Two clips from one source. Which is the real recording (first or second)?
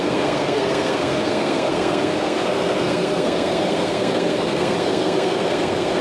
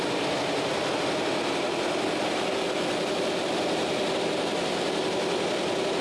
second